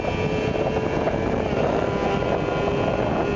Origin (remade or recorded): recorded